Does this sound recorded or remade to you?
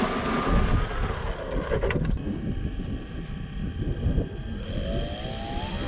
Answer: recorded